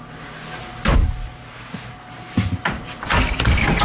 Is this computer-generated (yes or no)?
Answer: no